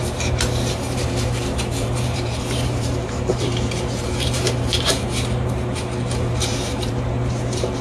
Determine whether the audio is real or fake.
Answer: fake